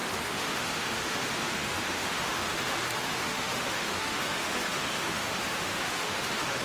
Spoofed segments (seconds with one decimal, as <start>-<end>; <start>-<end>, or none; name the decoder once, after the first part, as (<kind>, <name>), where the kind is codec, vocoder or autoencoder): 0.0-6.6 (autoencoder, DAC-VAE)